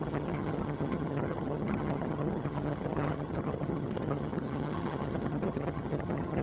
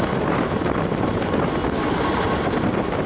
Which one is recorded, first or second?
second